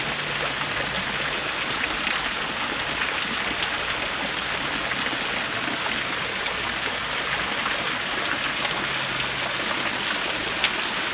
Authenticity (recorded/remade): recorded